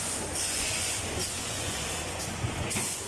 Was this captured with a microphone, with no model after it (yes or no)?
no